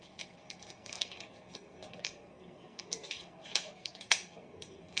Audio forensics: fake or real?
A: fake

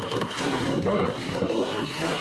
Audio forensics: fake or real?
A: fake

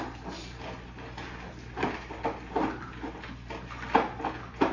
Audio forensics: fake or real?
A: real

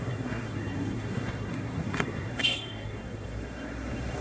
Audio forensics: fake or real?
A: fake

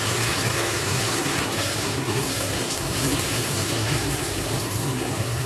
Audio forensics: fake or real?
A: fake